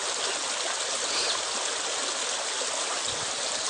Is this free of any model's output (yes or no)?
yes